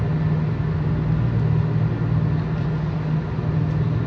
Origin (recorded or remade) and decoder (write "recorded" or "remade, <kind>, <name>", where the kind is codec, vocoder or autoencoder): recorded